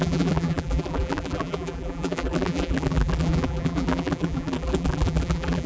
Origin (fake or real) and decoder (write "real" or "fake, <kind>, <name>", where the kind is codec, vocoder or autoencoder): fake, vocoder, BigVGAN v2